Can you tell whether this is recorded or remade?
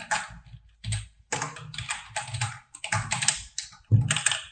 recorded